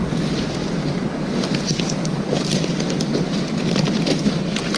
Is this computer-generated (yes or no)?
yes